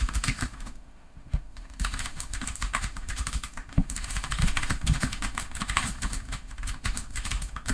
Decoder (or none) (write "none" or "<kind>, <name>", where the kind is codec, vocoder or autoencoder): autoencoder, DAC-VAE